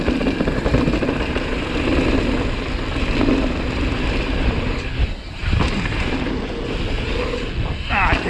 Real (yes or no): yes